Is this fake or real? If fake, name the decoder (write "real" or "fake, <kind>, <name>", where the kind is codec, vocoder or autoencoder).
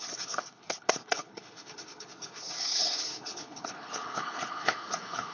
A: fake, codec, HILCodec